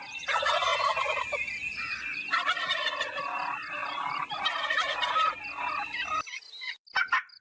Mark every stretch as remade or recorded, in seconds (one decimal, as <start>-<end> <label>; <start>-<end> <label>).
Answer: 0.0-3.8 recorded; 3.8-5.4 remade; 5.4-7.4 recorded